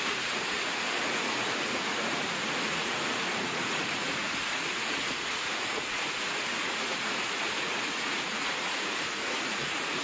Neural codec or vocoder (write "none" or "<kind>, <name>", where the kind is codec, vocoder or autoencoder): vocoder, Vocos